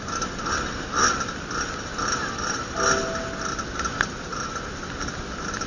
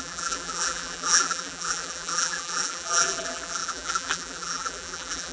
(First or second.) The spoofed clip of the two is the second